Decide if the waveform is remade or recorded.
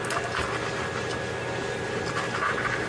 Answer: recorded